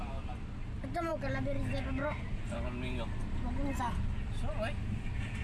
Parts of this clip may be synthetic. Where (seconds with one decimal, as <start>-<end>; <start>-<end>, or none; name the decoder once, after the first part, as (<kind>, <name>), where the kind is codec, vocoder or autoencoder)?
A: none